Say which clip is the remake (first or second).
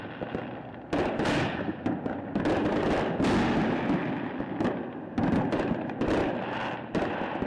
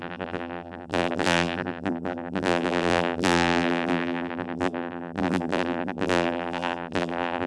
second